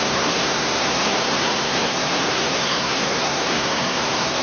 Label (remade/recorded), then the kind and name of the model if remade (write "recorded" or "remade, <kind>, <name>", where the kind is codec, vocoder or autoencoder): remade, codec, SNAC